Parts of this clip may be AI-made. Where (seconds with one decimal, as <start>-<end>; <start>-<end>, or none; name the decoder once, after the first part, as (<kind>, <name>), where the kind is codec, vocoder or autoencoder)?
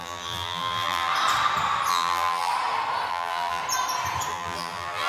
0.0-1.1 (vocoder, BigVGAN v2); 1.9-2.5; 3.1-3.6; 4.3-5.1